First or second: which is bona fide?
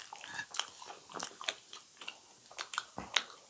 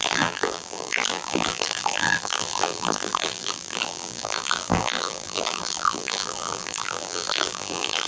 first